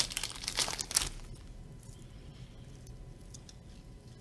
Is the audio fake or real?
real